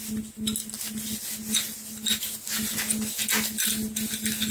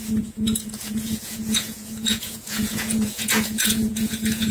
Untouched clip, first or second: first